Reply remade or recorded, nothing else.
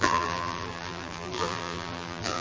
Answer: remade